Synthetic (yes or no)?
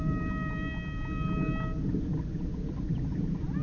no